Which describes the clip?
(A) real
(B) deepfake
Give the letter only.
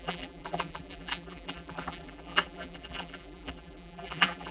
B